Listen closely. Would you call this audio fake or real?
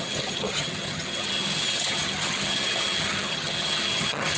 fake